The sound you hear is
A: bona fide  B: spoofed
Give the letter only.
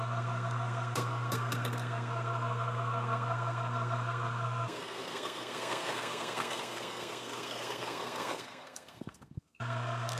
B